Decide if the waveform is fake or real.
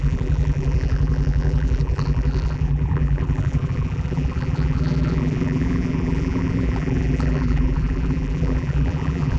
fake